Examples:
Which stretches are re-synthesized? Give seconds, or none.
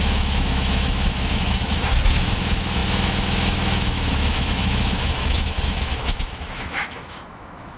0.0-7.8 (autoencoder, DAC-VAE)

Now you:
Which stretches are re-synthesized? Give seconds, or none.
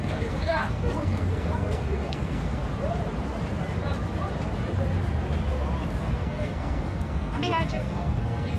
0.0-2.6 (codec, SNAC); 6.0-8.6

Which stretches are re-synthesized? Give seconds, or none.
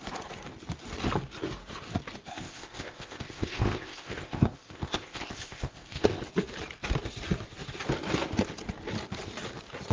2.3-6.2 (codec, ZipCodec)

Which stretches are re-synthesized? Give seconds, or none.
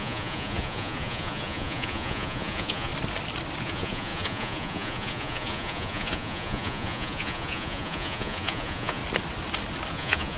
0.0-2.9 (vocoder, Vocos); 3.6-9.0; 9.9-10.4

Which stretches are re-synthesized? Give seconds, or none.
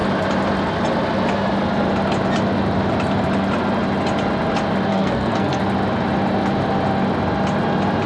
4.9-5.6 (codec, SNAC)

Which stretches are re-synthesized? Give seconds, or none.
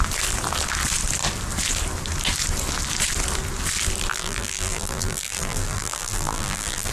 4.1-6.9 (vocoder, BigVGAN v2)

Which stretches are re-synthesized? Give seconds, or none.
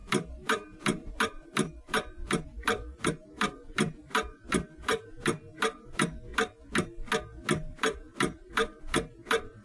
0.0-6.3 (vocoder, BigVGAN v2); 7.7-9.6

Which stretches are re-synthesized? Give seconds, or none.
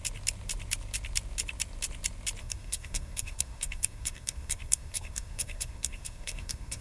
2.4-6.8 (codec, SNAC)